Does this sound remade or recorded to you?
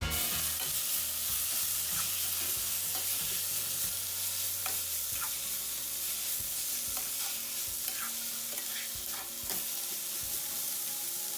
recorded